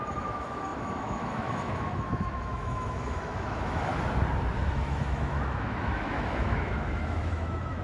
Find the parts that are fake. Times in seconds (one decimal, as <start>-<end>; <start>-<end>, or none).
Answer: 0.0-3.9; 4.6-7.8